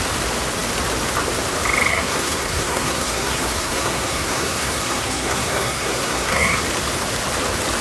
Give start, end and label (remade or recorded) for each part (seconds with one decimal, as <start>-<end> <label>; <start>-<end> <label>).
0.0-1.9 recorded; 1.9-6.6 remade; 6.6-7.8 recorded